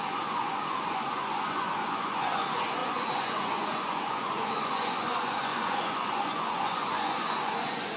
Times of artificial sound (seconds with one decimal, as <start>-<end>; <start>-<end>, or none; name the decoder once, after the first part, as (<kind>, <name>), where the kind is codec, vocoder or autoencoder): 0.0-8.0 (vocoder, Vocos)